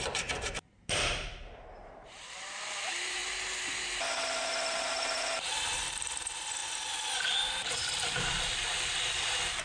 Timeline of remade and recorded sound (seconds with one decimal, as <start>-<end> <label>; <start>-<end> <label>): 0.0-3.2 remade; 3.2-4.8 recorded; 4.8-9.6 remade